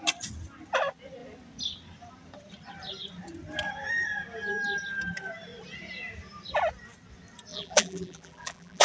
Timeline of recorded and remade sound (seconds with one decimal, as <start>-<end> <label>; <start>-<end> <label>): 0.0-7.5 recorded; 7.5-8.8 remade